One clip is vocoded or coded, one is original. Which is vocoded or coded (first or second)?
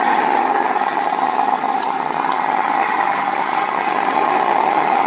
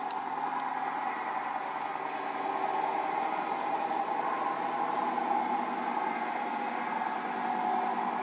first